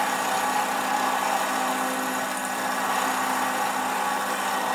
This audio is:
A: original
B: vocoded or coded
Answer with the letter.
A